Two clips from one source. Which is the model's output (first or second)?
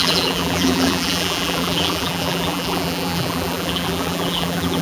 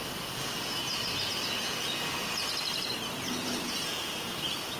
first